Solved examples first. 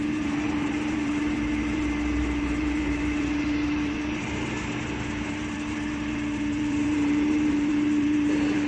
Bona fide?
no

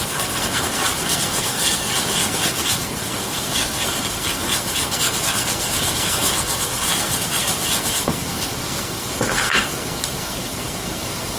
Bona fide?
no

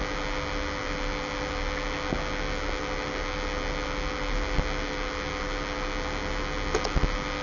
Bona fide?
yes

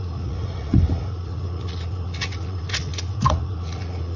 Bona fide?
no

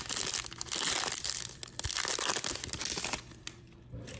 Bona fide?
yes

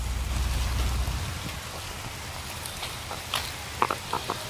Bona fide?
yes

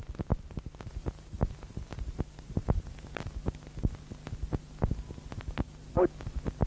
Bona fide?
yes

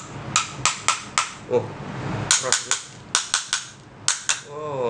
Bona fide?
yes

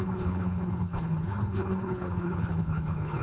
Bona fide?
no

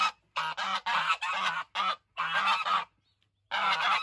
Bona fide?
yes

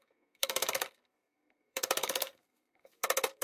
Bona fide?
no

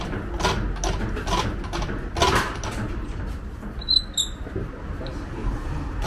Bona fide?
yes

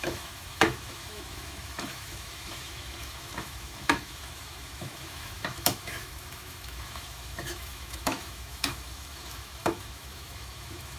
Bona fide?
no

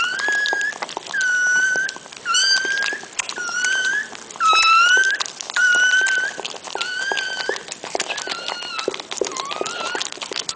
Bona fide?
no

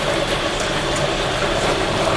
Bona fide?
no